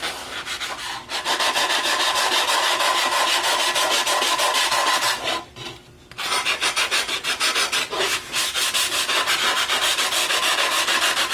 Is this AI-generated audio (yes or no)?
no